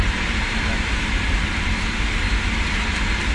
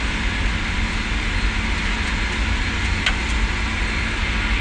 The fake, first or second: first